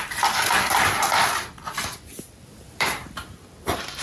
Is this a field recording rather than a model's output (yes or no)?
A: no